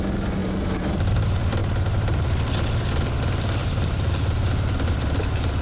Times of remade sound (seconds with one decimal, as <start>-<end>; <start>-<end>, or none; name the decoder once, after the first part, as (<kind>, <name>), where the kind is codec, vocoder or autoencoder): 0.4-1.2 (vocoder, BigVGAN v2); 3.6-4.1